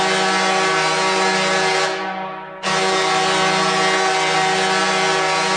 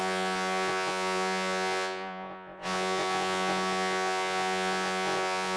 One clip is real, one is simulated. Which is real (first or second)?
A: first